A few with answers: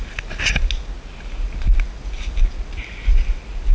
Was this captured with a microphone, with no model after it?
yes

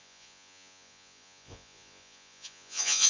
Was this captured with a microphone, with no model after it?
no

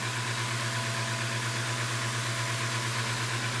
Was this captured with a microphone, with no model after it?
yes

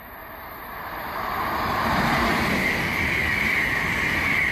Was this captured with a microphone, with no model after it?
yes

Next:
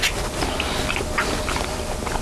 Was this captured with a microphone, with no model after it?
yes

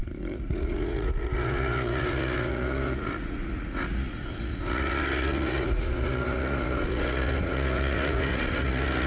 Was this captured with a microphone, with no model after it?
no